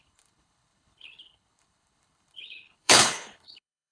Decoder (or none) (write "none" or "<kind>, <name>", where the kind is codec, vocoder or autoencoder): codec, HILCodec